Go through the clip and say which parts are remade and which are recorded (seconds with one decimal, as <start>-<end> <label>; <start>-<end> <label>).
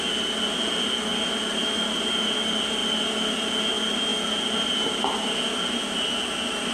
0.0-6.7 recorded